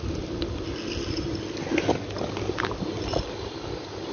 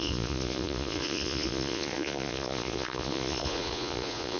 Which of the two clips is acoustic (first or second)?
first